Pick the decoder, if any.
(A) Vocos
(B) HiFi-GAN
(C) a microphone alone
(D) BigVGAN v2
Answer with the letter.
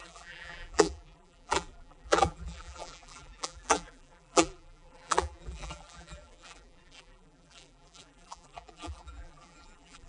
D